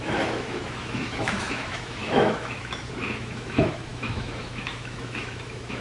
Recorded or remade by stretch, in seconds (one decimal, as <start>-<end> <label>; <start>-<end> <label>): 0.0-5.8 remade